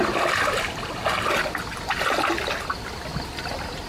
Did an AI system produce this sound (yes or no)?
no